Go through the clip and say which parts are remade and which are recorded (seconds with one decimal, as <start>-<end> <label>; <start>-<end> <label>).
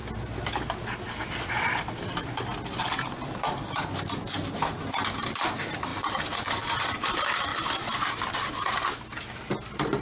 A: 0.0-10.0 recorded